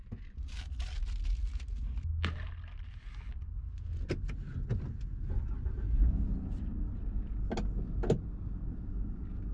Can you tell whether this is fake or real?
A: real